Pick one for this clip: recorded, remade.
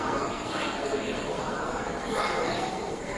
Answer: remade